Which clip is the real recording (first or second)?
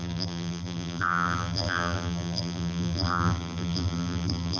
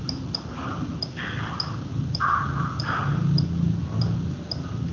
second